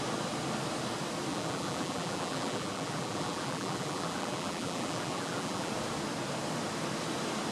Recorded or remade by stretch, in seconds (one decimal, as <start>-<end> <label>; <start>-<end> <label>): 0.0-1.3 recorded; 1.3-5.7 remade; 5.7-7.5 recorded